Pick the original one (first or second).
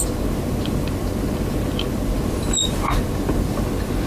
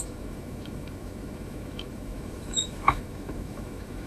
first